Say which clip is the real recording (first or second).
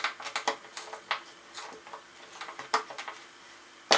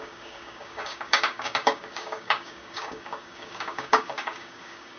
first